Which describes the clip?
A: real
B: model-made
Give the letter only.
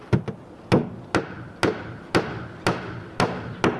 A